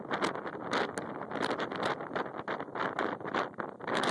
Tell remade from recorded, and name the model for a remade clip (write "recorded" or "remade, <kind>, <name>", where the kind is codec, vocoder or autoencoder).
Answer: recorded